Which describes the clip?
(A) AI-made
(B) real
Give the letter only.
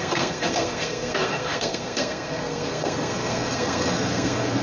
A